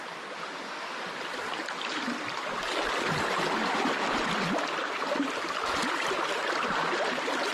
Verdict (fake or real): real